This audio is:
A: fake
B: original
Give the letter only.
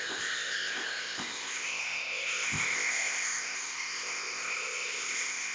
A